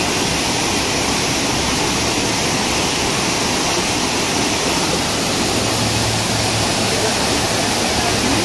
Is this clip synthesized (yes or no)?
no